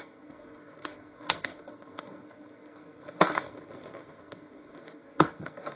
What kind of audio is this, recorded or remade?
remade